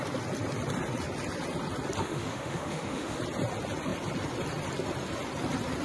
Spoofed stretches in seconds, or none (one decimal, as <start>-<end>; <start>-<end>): 2.0-3.2